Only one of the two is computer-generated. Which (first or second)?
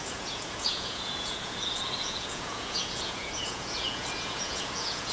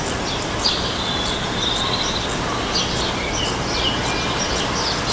first